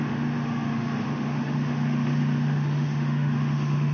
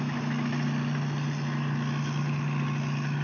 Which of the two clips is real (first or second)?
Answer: second